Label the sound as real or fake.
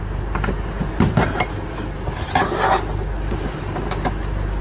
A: real